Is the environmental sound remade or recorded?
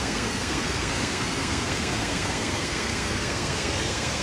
remade